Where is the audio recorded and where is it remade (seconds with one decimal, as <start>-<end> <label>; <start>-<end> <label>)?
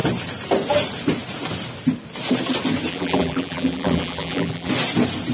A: 0.0-2.9 recorded; 2.9-4.7 remade; 4.7-5.3 recorded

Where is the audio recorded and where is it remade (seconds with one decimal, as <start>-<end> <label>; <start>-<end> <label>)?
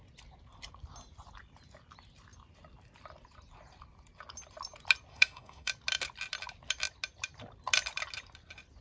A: 0.0-5.1 recorded; 5.1-5.7 remade; 5.7-8.8 recorded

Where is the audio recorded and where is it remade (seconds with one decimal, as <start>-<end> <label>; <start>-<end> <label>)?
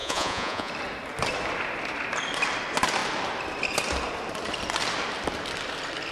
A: 0.0-0.7 remade; 0.7-6.1 recorded